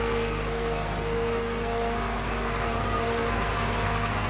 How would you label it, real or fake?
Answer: fake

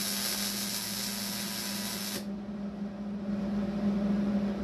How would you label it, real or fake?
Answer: real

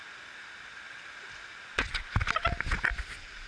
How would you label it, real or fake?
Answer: real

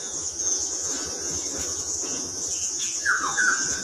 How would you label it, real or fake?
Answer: fake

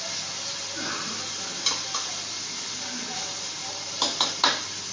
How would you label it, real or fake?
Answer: real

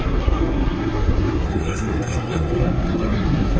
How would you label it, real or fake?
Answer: fake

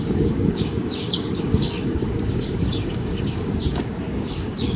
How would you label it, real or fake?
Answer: fake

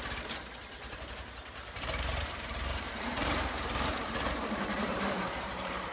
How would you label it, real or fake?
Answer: fake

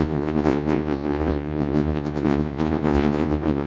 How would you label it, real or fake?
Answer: fake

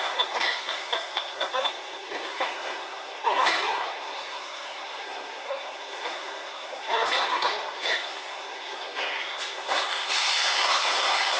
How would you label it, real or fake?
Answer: fake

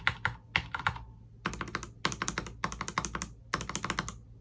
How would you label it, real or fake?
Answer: real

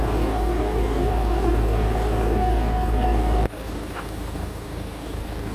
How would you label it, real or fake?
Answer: fake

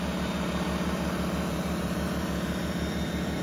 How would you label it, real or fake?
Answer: fake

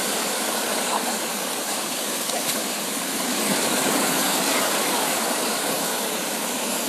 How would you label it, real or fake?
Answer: fake